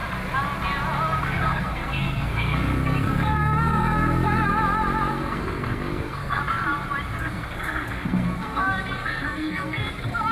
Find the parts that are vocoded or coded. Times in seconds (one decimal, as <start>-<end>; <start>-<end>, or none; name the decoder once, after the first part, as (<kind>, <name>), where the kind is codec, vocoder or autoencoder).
1.2-4.5 (codec, SNAC); 5.1-6.4; 7.2-10.3